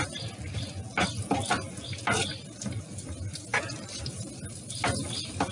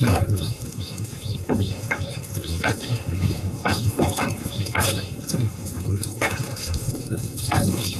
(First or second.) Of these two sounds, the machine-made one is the second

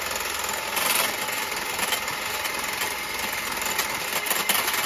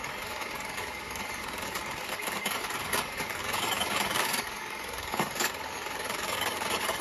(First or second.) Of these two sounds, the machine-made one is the second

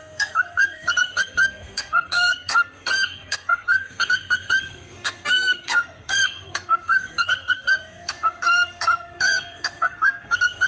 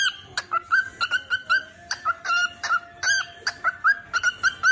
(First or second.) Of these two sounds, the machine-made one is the first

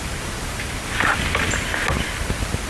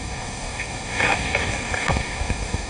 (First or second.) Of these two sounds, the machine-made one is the second